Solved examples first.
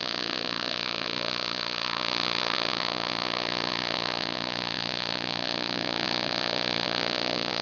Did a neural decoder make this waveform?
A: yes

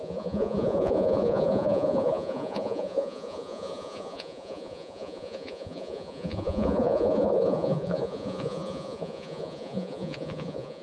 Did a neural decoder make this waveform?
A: yes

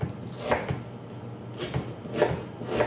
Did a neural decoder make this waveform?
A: no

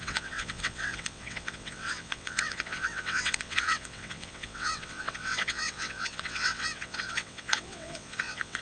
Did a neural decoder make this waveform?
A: yes